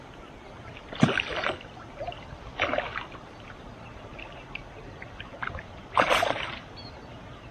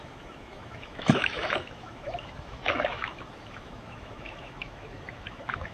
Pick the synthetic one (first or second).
second